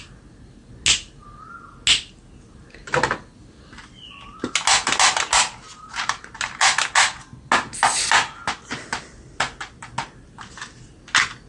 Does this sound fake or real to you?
real